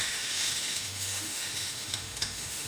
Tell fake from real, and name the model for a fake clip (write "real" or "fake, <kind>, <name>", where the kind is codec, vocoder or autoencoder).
fake, autoencoder, DAC-VAE